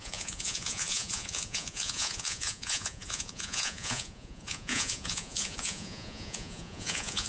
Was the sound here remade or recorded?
remade